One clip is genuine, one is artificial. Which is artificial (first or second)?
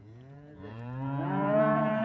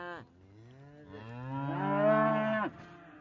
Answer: first